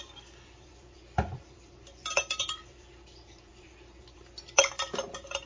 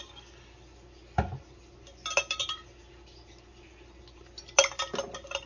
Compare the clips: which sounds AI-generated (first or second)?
first